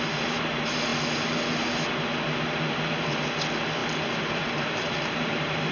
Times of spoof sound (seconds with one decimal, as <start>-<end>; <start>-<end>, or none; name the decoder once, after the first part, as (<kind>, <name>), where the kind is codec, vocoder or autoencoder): 3.8-5.7 (vocoder, BigVGAN v2)